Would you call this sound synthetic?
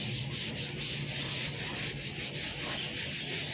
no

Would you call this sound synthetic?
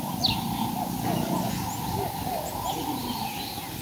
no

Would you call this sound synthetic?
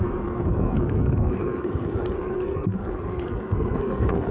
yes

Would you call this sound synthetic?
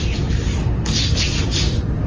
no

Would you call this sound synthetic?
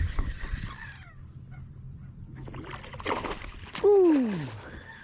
no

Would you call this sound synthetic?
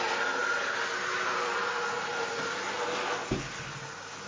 no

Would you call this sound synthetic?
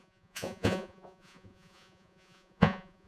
yes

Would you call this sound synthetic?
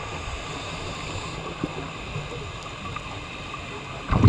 no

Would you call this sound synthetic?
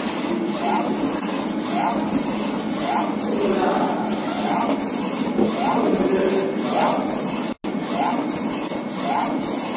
no